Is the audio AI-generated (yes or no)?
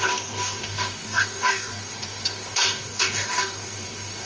yes